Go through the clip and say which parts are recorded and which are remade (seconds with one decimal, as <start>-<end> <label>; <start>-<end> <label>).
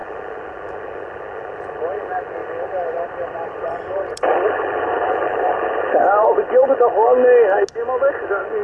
0.0-2.4 recorded; 2.4-6.7 remade; 6.7-8.6 recorded